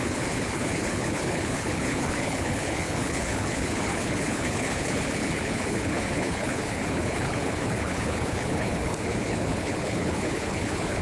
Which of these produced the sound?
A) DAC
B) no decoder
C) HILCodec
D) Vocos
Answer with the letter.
C